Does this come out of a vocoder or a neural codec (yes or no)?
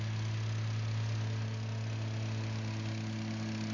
no